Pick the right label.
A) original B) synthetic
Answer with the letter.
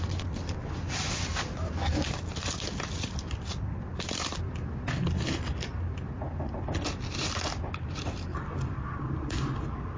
A